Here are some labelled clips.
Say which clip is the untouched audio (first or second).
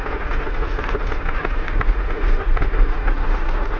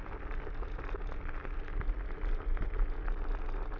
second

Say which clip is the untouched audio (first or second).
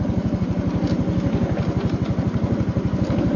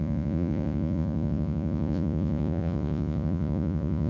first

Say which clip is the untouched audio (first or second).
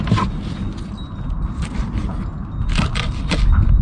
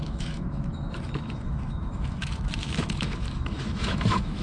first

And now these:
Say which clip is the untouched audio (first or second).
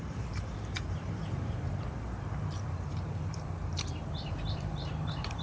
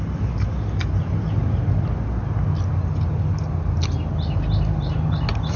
second